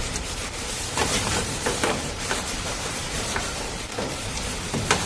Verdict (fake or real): fake